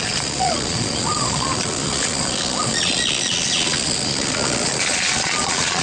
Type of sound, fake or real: fake